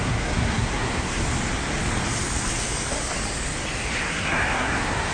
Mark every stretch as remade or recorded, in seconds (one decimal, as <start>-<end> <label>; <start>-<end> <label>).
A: 0.0-1.2 remade; 1.2-3.9 recorded; 3.9-5.1 remade